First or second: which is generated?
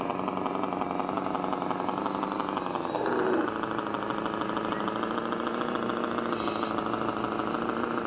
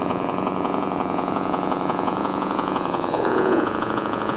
second